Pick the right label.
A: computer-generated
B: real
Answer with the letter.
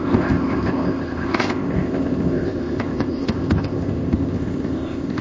A